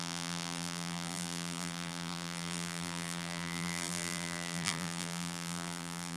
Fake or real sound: fake